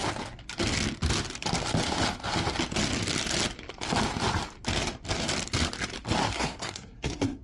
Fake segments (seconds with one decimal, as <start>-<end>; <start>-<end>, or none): 6.3-7.4